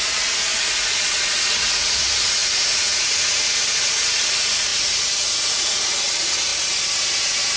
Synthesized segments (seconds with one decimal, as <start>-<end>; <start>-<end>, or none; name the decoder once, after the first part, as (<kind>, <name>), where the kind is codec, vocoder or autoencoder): 0.0-6.5 (vocoder, Vocos)